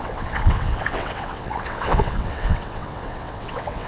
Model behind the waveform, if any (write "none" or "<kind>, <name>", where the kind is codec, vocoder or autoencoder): vocoder, WaveNeXt